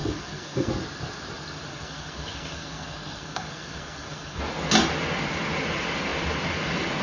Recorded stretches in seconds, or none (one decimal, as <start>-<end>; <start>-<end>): 0.7-1.7; 4.4-7.0